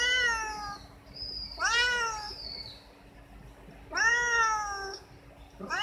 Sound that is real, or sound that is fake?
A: real